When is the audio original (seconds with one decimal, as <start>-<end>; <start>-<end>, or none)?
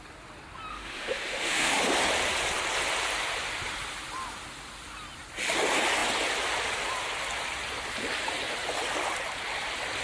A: 0.0-0.7; 1.8-10.0